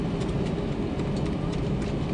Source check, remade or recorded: recorded